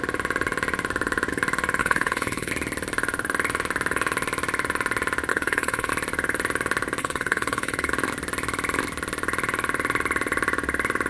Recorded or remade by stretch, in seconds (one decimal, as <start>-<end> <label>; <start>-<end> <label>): 0.0-1.8 recorded; 1.8-2.5 remade; 2.5-5.3 recorded; 5.3-5.9 remade; 5.9-7.0 recorded; 7.0-7.9 remade; 7.9-11.1 recorded